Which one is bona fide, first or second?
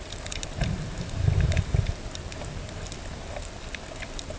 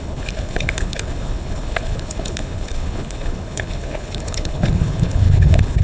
first